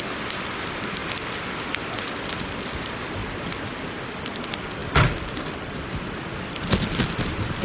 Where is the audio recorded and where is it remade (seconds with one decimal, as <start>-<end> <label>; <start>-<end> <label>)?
0.0-7.6 recorded